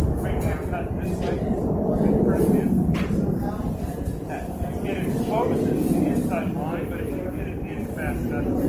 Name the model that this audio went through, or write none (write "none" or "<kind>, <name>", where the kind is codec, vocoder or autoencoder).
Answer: none